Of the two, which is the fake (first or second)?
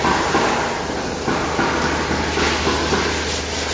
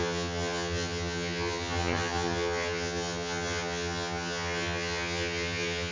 second